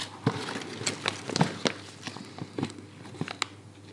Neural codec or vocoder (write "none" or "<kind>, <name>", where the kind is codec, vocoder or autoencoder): none